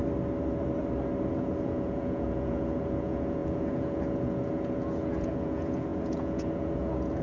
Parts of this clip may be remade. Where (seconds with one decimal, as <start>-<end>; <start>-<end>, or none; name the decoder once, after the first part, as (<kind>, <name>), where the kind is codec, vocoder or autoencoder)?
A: 1.3-7.2 (vocoder, Vocos)